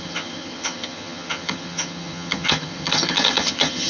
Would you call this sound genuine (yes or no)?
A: no